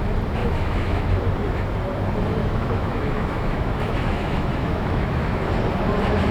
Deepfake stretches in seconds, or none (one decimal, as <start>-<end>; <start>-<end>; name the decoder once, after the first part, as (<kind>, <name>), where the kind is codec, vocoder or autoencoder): 0.4-1.1 (autoencoder, DAC-VAE); 2.4-5.5